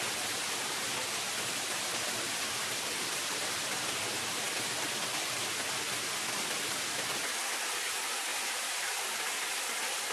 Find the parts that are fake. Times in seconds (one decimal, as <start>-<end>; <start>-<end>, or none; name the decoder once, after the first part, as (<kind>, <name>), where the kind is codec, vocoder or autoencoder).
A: 8.3-9.4 (vocoder, BigVGAN v2)